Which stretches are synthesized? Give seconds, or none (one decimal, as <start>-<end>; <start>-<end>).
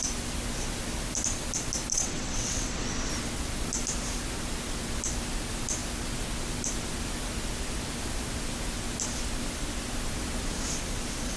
1.9-3.1